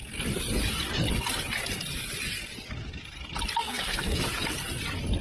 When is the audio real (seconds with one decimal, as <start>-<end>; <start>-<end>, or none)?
0.0-3.6; 4.2-5.2